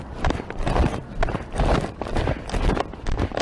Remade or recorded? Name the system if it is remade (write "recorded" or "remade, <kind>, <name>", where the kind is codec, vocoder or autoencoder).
recorded